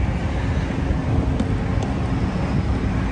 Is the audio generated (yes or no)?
no